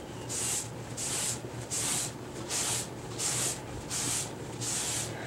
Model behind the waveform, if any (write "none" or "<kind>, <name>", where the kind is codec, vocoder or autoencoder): none